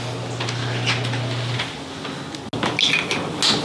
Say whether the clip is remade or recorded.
recorded